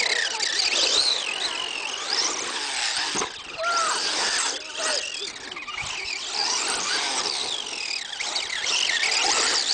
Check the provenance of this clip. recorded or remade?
recorded